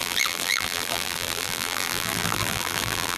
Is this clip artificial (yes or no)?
yes